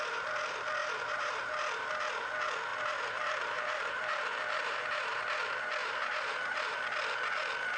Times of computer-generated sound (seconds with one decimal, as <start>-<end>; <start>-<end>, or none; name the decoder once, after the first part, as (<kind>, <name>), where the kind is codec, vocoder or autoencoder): 0.8-1.4 (vocoder, BigVGAN v2); 2.7-5.2; 5.8-6.8